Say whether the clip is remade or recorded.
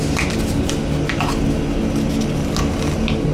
recorded